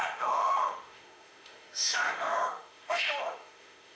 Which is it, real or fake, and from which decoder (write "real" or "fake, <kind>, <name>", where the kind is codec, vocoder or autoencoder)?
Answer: fake, autoencoder, DAC-VAE